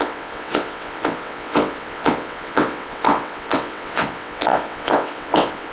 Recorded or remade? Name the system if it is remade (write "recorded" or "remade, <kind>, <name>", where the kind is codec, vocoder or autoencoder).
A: remade, vocoder, WaveNeXt